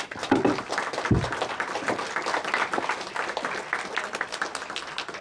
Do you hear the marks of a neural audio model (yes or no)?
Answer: no